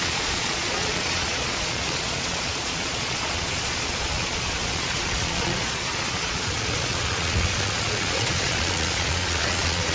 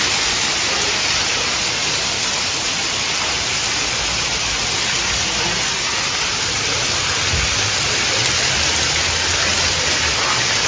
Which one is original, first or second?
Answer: second